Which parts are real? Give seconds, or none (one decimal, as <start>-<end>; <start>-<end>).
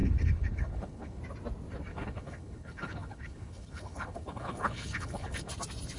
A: 1.2-1.9; 5.5-6.0